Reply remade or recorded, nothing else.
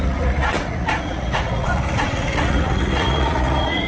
remade